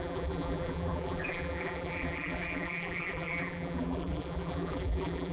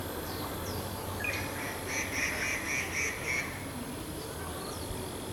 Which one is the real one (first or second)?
second